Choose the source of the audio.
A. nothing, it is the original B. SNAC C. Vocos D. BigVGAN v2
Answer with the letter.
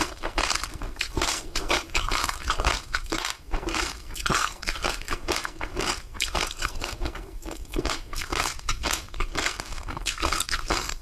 B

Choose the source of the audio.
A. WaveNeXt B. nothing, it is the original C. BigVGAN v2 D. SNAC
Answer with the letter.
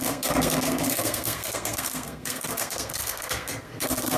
D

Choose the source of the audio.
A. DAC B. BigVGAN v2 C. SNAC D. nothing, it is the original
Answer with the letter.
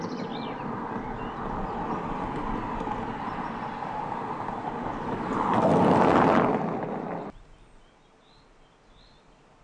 D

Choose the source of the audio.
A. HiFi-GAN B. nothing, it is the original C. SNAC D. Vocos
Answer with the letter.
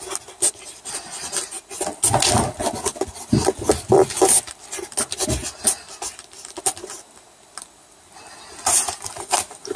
B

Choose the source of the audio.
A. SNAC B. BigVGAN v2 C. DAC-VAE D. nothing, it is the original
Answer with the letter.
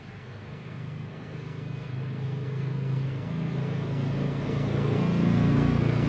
A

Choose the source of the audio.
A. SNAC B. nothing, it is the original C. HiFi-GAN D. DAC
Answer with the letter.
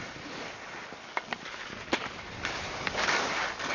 B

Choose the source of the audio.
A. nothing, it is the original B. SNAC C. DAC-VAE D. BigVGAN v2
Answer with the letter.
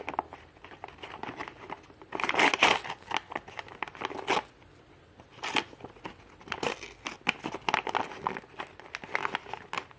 A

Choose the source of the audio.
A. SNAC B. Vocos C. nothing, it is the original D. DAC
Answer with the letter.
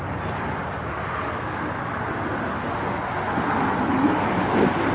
C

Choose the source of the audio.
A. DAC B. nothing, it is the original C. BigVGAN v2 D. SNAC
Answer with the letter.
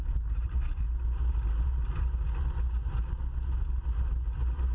B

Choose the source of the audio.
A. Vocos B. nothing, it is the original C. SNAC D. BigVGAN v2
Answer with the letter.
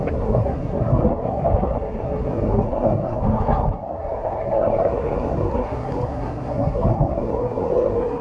C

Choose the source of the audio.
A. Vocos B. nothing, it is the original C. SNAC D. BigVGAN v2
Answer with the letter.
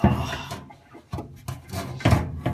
B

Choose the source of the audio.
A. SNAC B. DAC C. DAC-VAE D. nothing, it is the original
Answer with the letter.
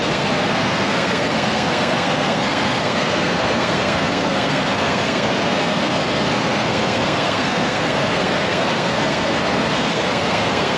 A